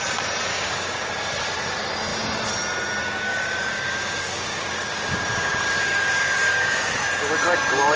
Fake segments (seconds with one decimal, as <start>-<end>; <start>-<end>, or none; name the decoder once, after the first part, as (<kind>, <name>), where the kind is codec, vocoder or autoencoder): 0.5-1.1 (codec, DAC); 3.0-7.0

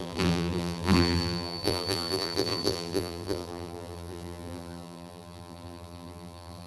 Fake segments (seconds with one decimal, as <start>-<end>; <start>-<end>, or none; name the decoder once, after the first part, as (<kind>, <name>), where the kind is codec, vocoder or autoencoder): 0.0-6.7 (vocoder, BigVGAN v2)

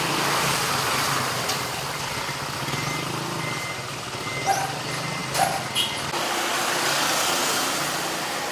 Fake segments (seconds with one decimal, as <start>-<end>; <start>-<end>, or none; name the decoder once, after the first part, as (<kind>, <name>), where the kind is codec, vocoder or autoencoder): none

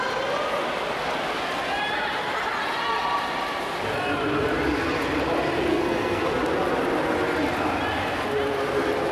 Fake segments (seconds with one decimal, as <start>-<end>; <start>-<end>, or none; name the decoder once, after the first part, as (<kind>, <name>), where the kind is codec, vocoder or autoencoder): 5.7-6.2 (codec, SNAC)

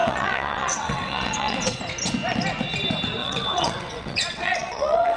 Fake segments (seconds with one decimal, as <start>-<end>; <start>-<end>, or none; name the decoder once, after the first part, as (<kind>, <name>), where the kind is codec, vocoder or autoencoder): 0.0-1.8 (vocoder, WaveNeXt); 3.2-5.2

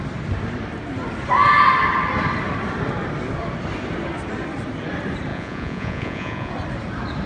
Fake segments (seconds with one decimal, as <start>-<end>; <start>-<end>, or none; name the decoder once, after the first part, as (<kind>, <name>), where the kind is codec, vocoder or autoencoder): 5.3-6.5 (vocoder, Vocos)

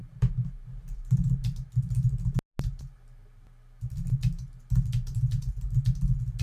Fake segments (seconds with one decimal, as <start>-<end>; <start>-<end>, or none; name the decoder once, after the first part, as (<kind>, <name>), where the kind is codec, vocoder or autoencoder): none